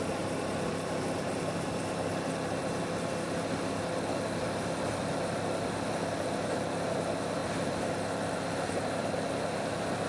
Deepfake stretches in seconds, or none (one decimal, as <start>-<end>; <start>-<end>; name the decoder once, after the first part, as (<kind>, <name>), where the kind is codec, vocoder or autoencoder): none